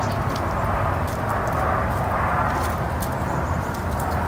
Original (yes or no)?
yes